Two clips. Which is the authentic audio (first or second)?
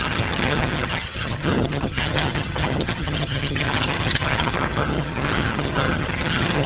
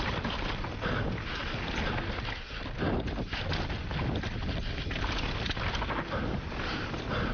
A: second